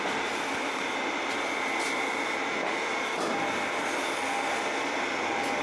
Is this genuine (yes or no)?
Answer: yes